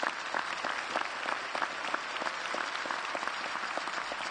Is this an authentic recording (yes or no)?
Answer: yes